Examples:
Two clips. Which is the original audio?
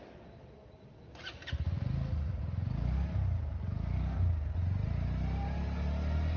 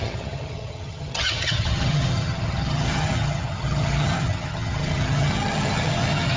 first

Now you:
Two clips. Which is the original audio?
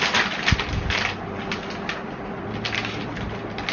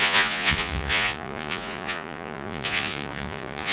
first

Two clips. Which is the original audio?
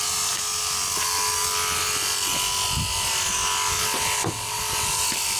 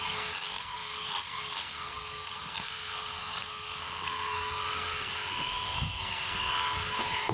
first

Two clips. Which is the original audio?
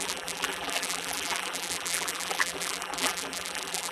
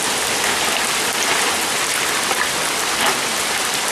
second